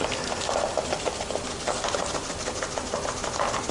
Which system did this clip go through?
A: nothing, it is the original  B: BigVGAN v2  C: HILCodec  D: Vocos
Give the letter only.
A